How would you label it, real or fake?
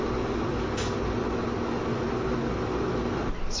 real